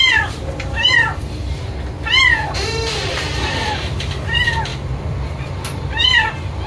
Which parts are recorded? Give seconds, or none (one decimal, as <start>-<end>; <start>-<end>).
1.4-2.3